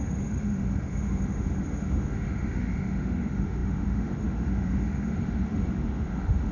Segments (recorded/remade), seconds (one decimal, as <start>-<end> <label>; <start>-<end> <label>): 0.0-6.5 remade

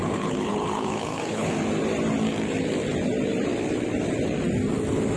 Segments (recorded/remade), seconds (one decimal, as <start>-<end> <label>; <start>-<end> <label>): 0.0-1.5 remade; 1.5-5.2 recorded